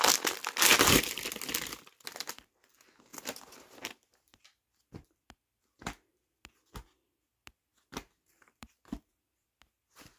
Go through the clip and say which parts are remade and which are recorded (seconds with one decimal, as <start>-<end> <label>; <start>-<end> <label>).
0.0-10.2 recorded